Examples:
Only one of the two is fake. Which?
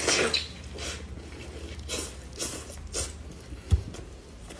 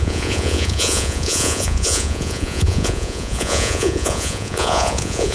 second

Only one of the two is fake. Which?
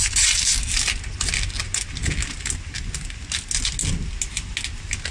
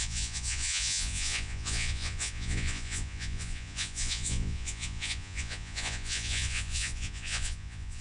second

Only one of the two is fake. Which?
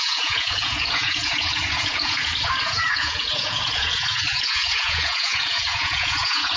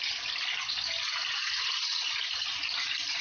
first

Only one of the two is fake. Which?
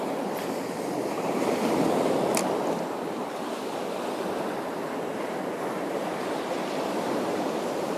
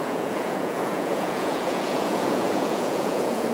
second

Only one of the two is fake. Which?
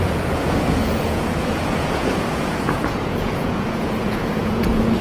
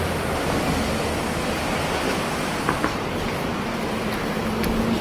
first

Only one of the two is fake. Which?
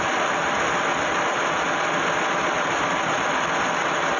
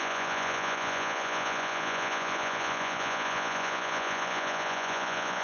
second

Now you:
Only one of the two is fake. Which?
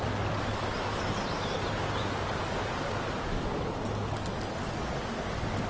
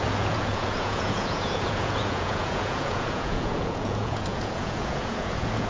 second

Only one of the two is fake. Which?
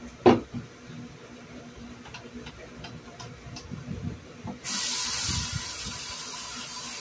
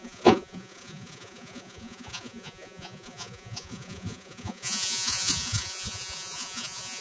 second